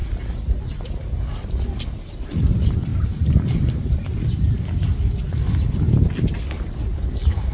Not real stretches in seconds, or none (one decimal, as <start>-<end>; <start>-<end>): 2.1-2.9